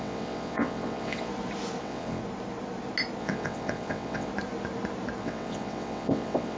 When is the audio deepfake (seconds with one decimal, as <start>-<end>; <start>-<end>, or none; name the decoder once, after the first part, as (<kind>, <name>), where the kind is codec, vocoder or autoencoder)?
0.0-1.3 (vocoder, WaveNeXt); 1.8-2.2; 3.2-4.3; 5.2-6.6